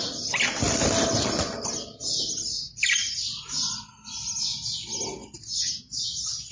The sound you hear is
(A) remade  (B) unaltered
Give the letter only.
B